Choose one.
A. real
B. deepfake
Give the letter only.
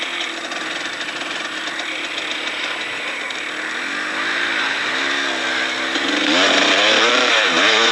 A